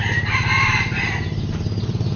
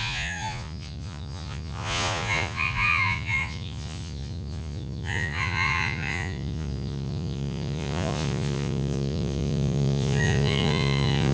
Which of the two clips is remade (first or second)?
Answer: second